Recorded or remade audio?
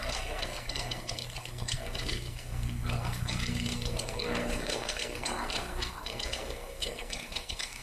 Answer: remade